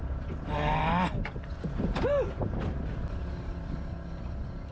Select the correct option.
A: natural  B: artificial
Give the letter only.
A